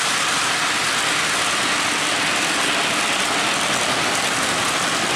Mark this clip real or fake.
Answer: real